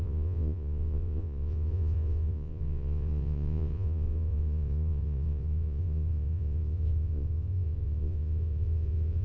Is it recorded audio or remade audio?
remade